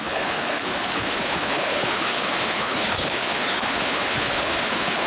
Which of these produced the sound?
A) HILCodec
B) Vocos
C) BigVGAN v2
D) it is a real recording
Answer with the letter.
A